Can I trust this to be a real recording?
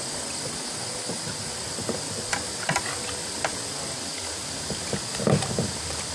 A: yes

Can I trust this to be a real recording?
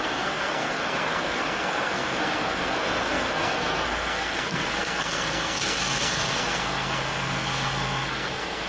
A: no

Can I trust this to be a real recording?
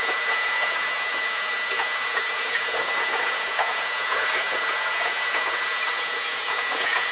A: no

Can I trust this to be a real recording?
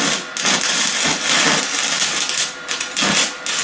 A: yes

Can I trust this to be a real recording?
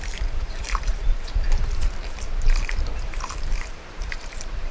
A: no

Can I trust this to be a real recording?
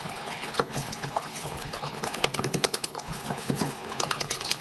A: no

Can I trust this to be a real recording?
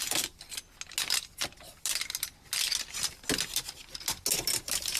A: yes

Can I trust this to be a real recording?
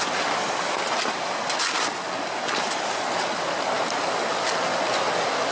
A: yes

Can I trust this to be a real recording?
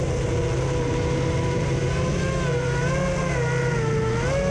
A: yes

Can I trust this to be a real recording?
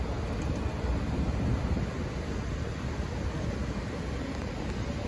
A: yes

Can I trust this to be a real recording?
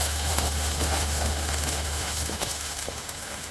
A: no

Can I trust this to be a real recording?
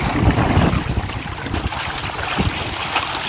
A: yes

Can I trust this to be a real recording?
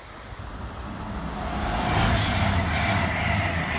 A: yes